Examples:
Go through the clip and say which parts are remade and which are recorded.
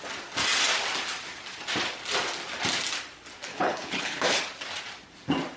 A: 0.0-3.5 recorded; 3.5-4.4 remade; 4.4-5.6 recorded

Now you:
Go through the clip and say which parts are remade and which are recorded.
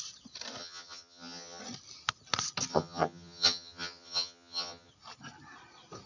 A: 0.0-0.6 recorded; 0.6-1.6 remade; 1.6-2.7 recorded; 2.7-4.9 remade; 4.9-6.1 recorded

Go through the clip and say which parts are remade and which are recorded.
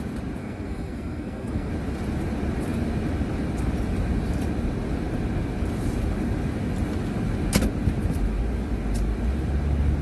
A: 0.0-0.4 recorded; 0.4-1.7 remade; 1.7-10.0 recorded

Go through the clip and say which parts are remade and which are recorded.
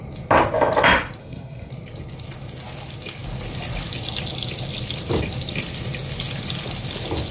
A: 0.0-1.2 recorded; 1.2-1.7 remade; 1.7-7.3 recorded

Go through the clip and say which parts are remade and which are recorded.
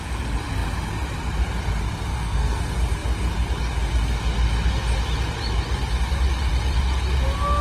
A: 0.0-2.1 recorded; 2.1-2.6 remade; 2.6-7.6 recorded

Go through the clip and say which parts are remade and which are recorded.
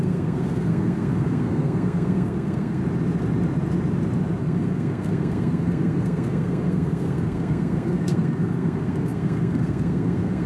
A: 0.0-2.8 remade; 2.8-4.4 recorded; 4.4-10.5 remade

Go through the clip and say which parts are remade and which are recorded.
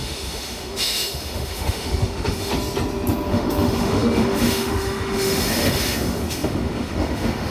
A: 0.0-2.5 remade; 2.5-3.3 recorded; 3.3-7.5 remade